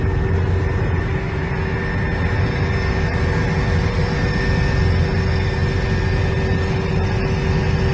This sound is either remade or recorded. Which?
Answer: recorded